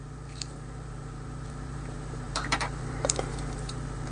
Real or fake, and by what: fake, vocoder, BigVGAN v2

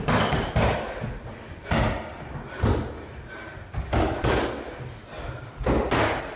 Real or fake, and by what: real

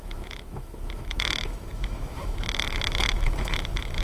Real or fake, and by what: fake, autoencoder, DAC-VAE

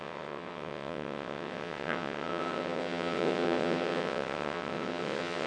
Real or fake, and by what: fake, vocoder, WaveNeXt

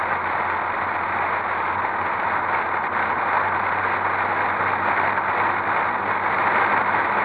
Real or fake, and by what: real